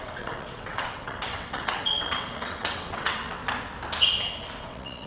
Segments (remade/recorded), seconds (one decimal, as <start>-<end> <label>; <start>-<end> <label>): 0.0-3.4 remade; 3.4-4.6 recorded; 4.6-5.1 remade